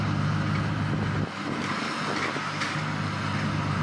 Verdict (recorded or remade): recorded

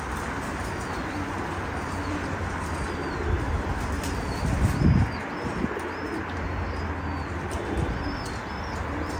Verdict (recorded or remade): recorded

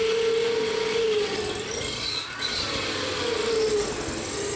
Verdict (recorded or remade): recorded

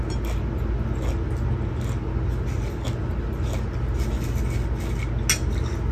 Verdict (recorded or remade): recorded